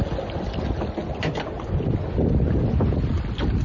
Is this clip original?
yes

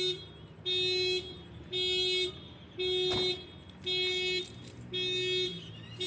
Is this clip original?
yes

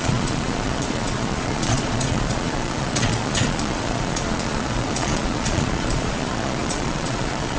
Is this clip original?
no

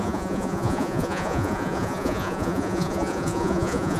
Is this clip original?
no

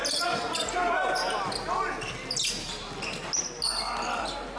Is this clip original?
yes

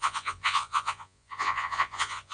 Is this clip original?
no